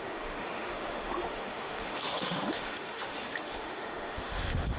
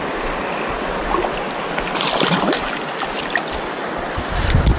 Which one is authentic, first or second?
second